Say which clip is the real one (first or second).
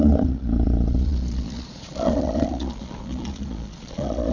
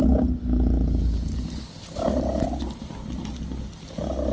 second